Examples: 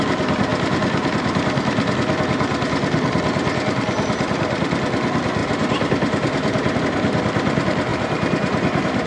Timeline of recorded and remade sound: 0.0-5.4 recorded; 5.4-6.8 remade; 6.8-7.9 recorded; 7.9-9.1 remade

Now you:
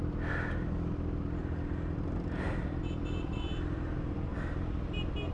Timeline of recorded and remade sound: 0.0-5.3 recorded

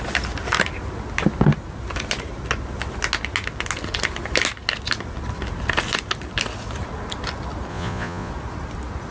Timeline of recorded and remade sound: 0.0-7.7 recorded; 7.7-8.3 remade; 8.3-9.1 recorded

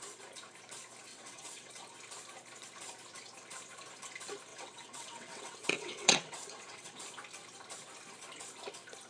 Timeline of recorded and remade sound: 0.0-1.1 recorded; 1.1-1.7 remade; 1.7-4.5 recorded; 4.5-6.9 remade; 6.9-9.1 recorded

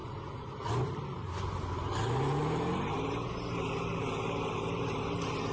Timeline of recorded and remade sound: 0.0-5.5 recorded